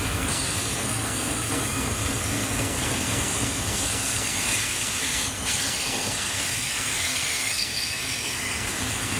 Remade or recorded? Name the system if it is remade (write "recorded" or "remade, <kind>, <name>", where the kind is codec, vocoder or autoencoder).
remade, codec, SNAC